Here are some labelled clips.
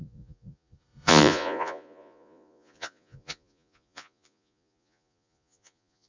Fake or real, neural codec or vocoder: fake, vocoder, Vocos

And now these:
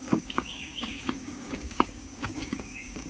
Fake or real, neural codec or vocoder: fake, codec, DAC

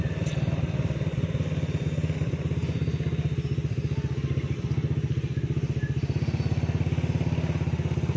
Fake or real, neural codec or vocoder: real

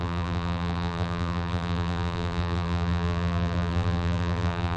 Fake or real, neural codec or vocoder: fake, vocoder, BigVGAN v2